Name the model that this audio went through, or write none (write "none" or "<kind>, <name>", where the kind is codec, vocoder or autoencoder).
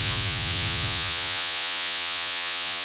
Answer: vocoder, Vocos